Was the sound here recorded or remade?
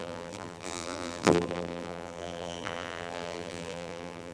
remade